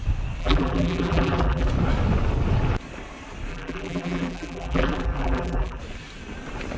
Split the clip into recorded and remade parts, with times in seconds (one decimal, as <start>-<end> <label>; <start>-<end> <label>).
0.0-0.4 recorded; 0.4-1.7 remade; 1.7-3.5 recorded; 3.5-5.8 remade; 5.8-6.8 recorded